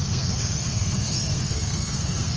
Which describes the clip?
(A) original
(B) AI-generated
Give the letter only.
B